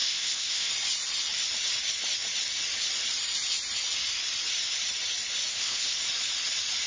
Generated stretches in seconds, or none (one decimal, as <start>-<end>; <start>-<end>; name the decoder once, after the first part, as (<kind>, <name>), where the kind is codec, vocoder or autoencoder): 0.0-0.7 (codec, ZipCodec); 5.5-6.0